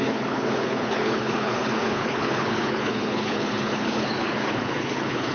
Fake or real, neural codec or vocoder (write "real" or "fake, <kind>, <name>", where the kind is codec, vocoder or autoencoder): fake, codec, HILCodec